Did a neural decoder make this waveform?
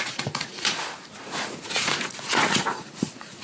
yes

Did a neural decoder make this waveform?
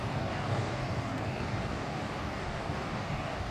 yes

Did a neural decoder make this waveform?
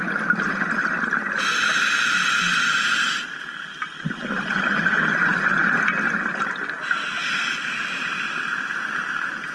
no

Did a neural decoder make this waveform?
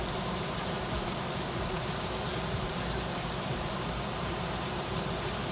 yes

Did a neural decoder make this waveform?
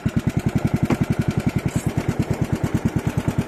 no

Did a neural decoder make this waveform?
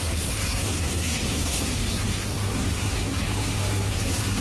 yes